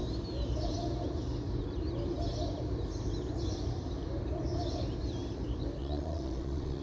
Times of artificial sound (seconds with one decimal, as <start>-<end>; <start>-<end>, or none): 5.8-6.8